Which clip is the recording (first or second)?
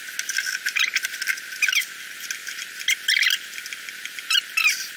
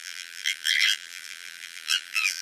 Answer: first